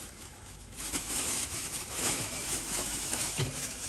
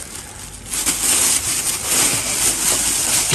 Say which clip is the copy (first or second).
first